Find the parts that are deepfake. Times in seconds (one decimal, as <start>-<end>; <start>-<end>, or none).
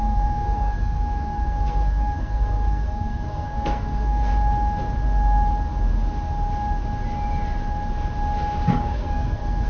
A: 0.0-4.3; 8.7-9.7